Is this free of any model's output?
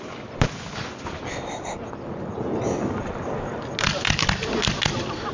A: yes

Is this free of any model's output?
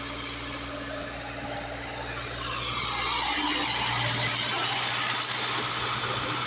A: yes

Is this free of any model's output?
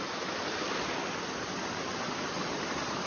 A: yes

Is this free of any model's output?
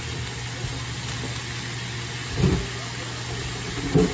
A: yes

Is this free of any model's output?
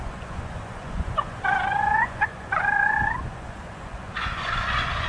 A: no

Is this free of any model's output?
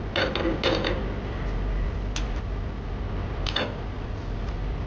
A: yes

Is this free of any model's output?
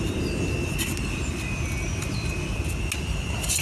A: yes